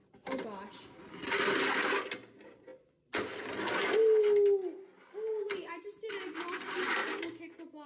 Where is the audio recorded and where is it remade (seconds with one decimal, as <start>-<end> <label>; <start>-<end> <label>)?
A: 0.0-7.9 recorded